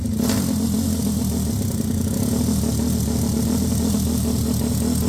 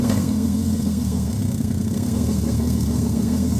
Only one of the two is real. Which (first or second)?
first